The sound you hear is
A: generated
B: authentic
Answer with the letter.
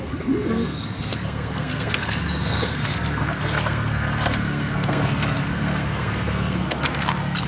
A